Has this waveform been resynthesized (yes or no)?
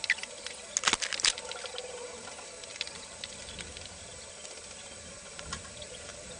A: no